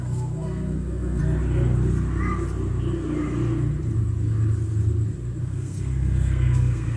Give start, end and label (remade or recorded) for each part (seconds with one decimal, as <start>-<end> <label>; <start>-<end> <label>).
0.0-1.2 remade; 1.2-5.4 recorded; 5.4-7.0 remade